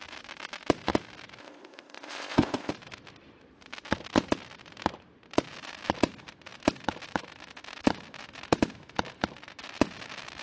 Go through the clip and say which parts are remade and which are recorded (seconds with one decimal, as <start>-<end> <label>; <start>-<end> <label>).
0.0-1.4 recorded; 1.4-2.7 remade; 2.7-10.4 recorded